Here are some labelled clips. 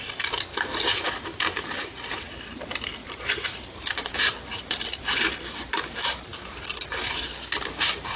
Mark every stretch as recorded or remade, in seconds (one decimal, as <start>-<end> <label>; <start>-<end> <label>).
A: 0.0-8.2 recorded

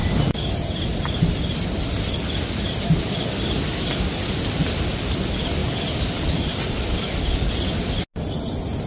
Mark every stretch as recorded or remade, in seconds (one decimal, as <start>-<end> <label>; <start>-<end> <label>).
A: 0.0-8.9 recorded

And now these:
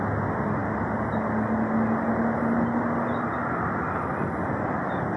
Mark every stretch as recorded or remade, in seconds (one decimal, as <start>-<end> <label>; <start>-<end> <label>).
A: 0.0-5.2 recorded

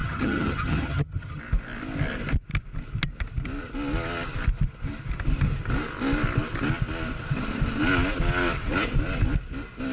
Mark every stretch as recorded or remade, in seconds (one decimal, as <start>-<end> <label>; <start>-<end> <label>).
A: 0.0-1.4 remade; 1.4-9.9 recorded

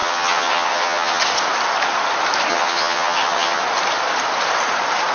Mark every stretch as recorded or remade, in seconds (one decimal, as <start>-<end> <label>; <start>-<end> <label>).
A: 0.0-1.2 remade; 1.2-2.5 recorded; 2.5-3.6 remade; 3.6-5.1 recorded

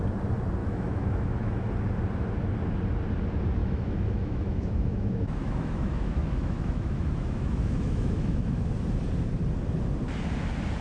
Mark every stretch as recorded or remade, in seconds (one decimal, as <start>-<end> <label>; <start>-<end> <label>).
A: 0.0-0.6 recorded; 0.6-1.7 remade; 1.7-3.6 recorded; 3.6-8.7 remade; 8.7-10.8 recorded